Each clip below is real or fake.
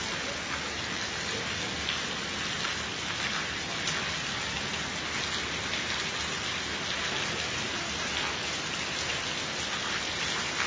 real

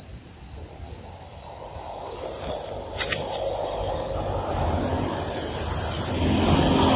real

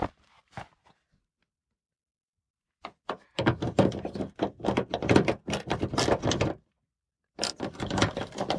fake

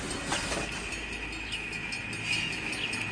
real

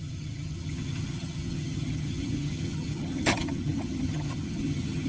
fake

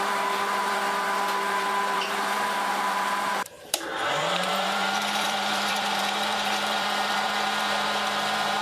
fake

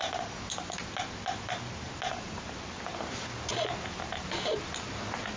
real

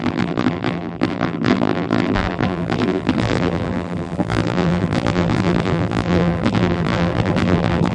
fake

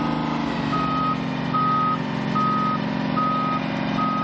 real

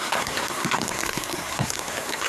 fake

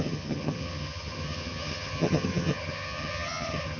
fake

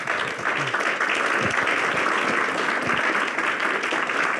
real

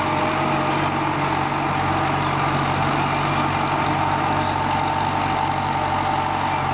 real